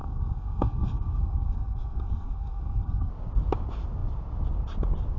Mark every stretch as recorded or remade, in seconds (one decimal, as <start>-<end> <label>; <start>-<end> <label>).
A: 0.0-3.1 remade; 3.1-5.2 recorded